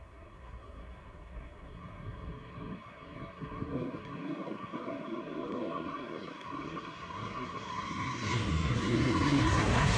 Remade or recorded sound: remade